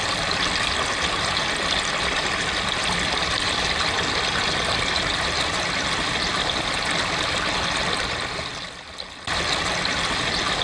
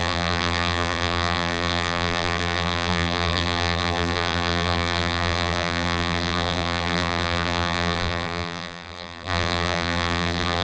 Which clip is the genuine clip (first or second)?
first